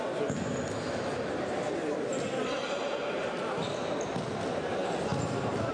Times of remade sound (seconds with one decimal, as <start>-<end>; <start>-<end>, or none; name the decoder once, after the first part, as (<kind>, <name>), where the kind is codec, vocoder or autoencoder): none